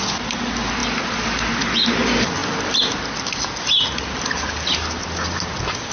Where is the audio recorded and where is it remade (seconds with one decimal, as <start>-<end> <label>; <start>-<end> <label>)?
0.0-5.9 recorded